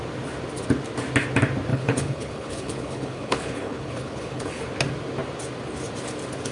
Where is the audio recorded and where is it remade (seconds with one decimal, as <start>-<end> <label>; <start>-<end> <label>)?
0.0-1.7 recorded; 1.7-4.6 remade; 4.6-6.5 recorded